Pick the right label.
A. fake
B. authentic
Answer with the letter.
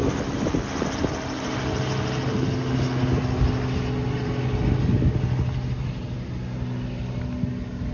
B